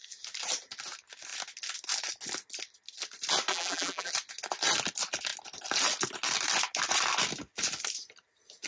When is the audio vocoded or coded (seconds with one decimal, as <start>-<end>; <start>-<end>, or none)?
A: 3.5-4.1